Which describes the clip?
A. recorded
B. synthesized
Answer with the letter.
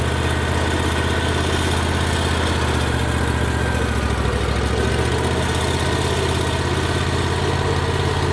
A